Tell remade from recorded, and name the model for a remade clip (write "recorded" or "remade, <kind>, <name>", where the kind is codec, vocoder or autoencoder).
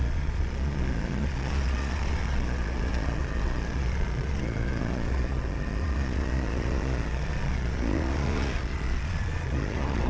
remade, vocoder, Vocos